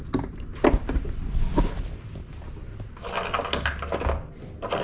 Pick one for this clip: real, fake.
real